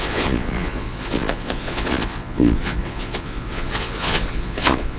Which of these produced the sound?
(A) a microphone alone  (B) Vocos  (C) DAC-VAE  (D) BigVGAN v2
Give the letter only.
B